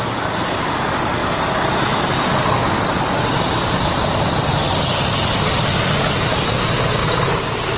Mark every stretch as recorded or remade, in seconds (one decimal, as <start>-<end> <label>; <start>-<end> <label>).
0.0-7.8 recorded